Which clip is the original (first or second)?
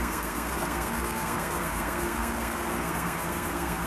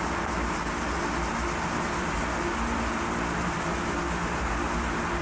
second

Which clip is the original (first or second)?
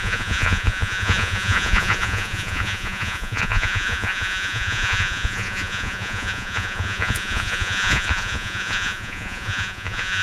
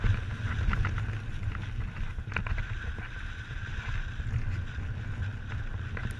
second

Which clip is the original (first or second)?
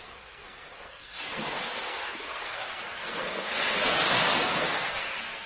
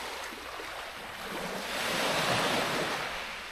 second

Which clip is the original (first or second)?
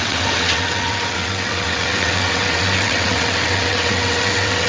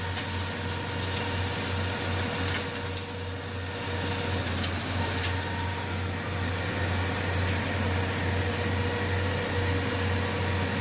second